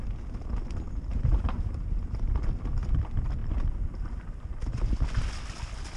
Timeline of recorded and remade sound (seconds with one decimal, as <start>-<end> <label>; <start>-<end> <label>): 0.0-1.1 recorded; 1.1-2.2 remade; 2.2-6.0 recorded